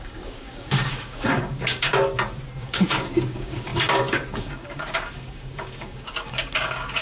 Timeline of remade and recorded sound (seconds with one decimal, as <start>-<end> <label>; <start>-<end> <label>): 0.0-1.9 remade; 1.9-2.6 recorded; 2.6-7.0 remade